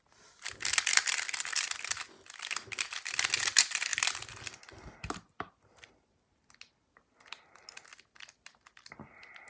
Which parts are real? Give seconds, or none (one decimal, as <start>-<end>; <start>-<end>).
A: 0.0-9.5